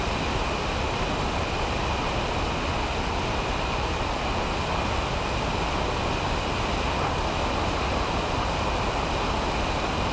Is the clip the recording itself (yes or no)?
yes